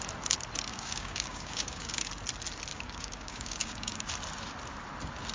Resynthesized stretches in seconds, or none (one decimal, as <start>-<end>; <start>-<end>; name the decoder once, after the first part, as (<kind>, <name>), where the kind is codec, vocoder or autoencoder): 0.7-2.1 (codec, DAC); 2.7-4.1